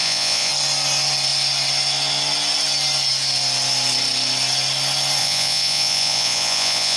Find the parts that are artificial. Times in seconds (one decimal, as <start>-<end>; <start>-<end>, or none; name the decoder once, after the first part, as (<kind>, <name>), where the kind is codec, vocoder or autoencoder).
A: 0.0-0.5 (vocoder, Vocos); 5.2-7.0